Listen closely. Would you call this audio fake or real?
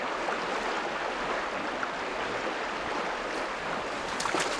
real